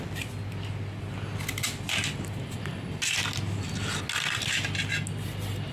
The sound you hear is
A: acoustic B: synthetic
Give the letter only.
A